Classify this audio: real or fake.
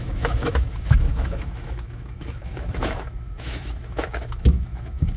fake